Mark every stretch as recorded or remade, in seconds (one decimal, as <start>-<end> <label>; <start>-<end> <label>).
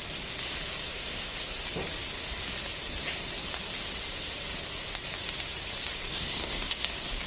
0.0-0.8 recorded; 0.8-1.5 remade; 1.5-5.9 recorded; 5.9-6.8 remade; 6.8-7.3 recorded